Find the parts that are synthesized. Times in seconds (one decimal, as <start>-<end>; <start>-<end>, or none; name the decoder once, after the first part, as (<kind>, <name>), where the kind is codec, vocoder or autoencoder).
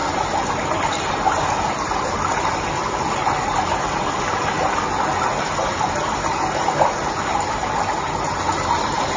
none